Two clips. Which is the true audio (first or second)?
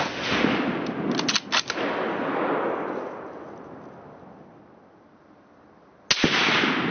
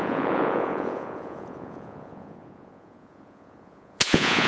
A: first